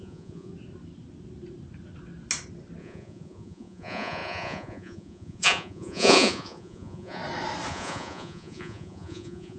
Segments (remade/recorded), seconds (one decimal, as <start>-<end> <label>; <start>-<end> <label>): 0.0-0.5 remade; 0.5-2.8 recorded; 2.8-7.2 remade; 7.2-7.7 recorded; 7.7-9.6 remade